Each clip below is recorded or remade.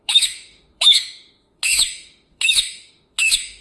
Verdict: remade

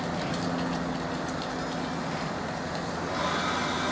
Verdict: recorded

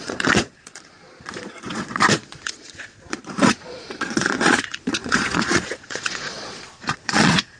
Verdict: remade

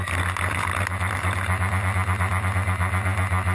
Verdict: recorded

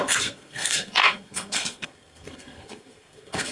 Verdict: remade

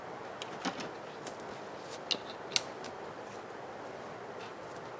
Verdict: recorded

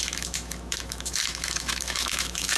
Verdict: remade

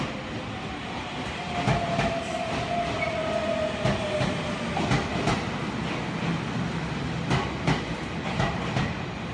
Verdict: recorded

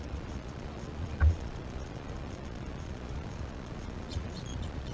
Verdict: remade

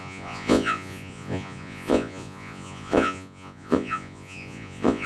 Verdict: remade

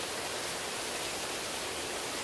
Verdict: recorded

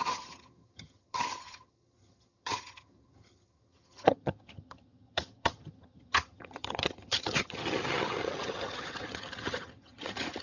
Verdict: remade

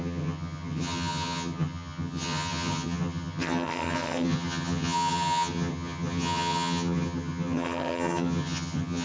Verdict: remade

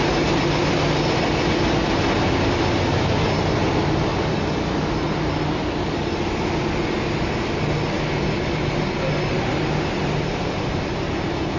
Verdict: recorded